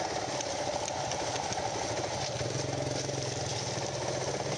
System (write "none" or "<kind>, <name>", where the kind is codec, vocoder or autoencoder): none